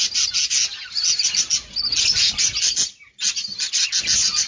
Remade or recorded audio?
recorded